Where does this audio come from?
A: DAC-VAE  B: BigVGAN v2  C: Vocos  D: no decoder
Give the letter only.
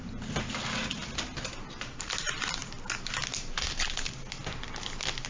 D